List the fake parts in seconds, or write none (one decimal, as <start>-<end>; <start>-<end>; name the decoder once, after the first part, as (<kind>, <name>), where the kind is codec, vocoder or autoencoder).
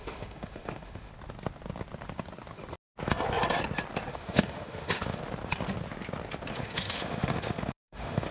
0.0-1.1 (autoencoder, DAC-VAE); 4.1-5.2; 6.5-8.3